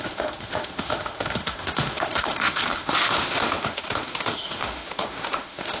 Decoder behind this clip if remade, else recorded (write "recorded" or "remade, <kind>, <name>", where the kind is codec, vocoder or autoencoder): remade, autoencoder, DAC-VAE